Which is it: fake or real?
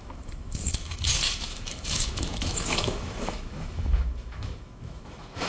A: fake